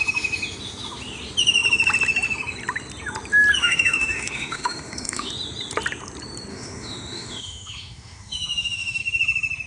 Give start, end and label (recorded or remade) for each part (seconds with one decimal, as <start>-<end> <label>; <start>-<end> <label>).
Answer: 0.0-3.6 recorded; 3.6-5.3 remade; 5.3-6.5 recorded; 6.5-9.0 remade; 9.0-9.7 recorded